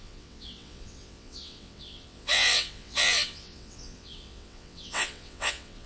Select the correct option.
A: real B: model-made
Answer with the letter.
B